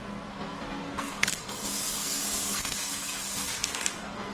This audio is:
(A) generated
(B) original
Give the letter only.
A